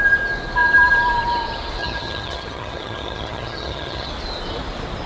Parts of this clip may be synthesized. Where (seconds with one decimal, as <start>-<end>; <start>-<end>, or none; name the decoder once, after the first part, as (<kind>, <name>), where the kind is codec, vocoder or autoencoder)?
1.8-4.1 (vocoder, HiFi-GAN)